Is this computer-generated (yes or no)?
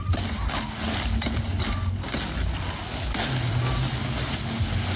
no